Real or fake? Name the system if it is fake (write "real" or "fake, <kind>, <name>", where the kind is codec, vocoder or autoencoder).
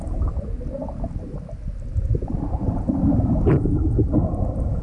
real